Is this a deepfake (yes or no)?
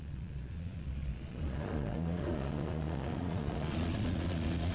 yes